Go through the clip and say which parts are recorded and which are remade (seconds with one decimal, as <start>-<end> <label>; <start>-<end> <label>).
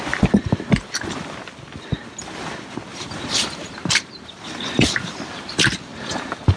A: 0.0-2.9 recorded; 2.9-5.2 remade; 5.2-6.6 recorded